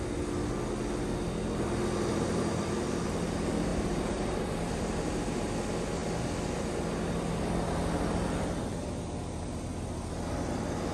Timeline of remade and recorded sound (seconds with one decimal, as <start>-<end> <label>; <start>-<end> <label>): 0.0-3.7 recorded; 3.7-5.5 remade; 5.5-10.9 recorded